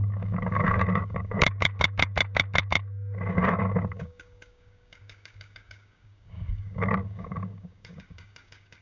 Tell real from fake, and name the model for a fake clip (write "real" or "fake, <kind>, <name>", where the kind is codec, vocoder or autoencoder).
fake, codec, DAC